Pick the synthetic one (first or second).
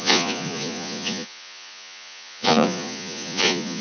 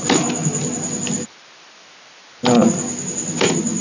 first